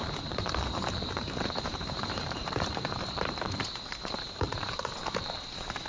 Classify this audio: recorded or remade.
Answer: remade